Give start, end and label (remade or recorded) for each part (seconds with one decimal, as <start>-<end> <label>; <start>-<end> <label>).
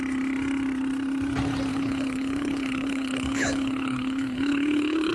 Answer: 0.0-1.7 recorded; 1.7-5.1 remade